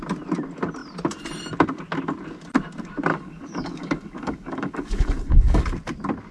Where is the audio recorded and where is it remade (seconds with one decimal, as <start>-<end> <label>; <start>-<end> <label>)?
0.0-3.1 recorded; 3.1-5.6 remade; 5.6-6.3 recorded